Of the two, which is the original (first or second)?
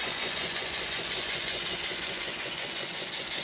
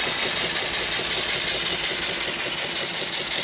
second